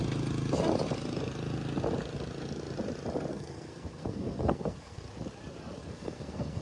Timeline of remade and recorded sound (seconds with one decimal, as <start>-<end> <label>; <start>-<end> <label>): 0.0-3.3 recorded; 3.3-5.0 remade; 5.0-5.8 recorded; 5.8-6.6 remade